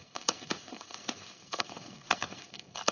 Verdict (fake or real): fake